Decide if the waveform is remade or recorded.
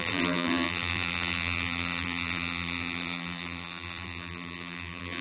remade